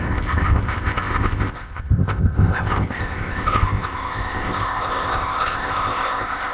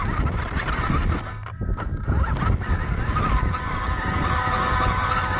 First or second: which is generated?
first